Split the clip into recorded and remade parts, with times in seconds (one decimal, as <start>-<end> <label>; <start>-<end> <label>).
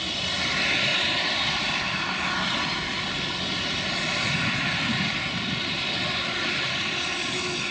0.0-0.9 recorded; 0.9-5.2 remade; 5.2-7.7 recorded